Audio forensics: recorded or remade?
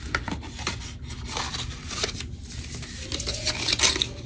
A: recorded